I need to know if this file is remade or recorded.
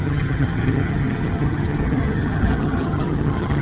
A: remade